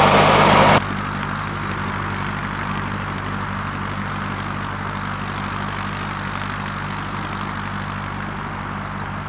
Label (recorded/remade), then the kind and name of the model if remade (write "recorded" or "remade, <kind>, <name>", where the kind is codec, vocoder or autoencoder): recorded